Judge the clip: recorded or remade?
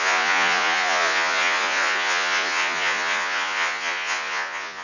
remade